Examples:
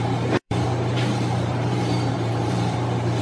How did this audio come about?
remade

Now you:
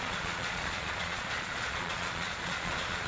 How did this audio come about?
remade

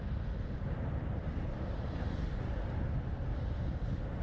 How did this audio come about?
recorded